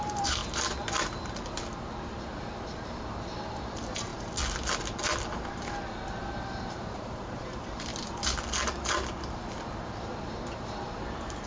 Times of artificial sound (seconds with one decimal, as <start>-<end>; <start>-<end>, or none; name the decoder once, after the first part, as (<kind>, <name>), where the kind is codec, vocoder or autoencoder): 0.0-0.4 (vocoder, BigVGAN v2); 3.0-4.1; 5.3-7.9; 10.2-11.5

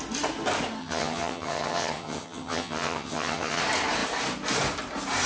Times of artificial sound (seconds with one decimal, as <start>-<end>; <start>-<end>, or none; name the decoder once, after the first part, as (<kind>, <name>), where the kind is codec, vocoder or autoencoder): 0.8-3.6 (vocoder, HiFi-GAN)

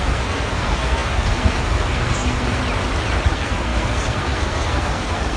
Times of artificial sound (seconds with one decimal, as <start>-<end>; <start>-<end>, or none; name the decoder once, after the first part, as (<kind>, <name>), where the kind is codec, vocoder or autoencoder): 0.0-2.6 (codec, SNAC); 3.3-5.4

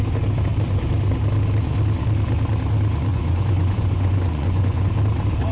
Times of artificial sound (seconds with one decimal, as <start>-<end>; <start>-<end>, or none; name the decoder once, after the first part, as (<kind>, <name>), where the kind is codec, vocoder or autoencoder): 3.1-4.9 (vocoder, Vocos)

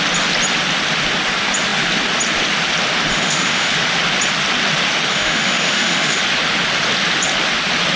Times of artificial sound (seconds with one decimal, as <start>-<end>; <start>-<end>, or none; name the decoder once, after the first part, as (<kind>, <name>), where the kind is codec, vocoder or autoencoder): 3.1-3.7 (autoencoder, DAC-VAE); 5.1-6.2

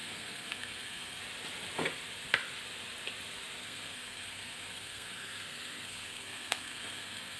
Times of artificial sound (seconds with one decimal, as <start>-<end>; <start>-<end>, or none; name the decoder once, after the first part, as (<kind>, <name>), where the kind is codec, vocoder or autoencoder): 0.0-1.2 (codec, SNAC); 3.6-7.4